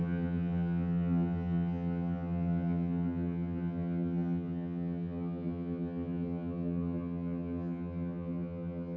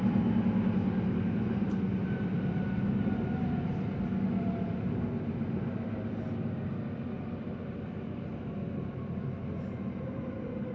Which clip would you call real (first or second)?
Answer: second